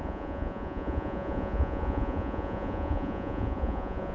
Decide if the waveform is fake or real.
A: fake